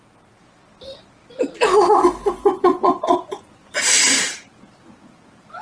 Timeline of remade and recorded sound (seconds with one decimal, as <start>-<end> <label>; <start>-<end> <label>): 0.0-2.4 recorded; 2.4-3.7 remade; 3.7-5.6 recorded